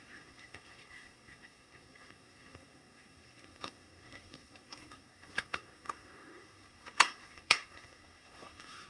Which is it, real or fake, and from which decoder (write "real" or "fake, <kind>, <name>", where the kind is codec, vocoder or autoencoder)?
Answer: fake, codec, SNAC